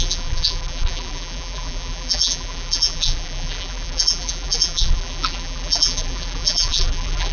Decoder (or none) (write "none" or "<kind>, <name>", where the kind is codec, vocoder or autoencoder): vocoder, BigVGAN v2